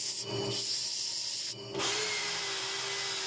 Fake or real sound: real